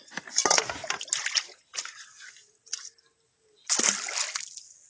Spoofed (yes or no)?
no